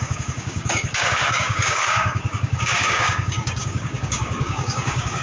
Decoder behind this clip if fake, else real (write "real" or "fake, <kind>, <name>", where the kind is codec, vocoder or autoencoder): fake, codec, DAC